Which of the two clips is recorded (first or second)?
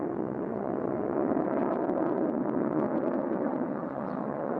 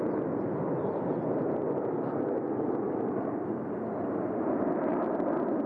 second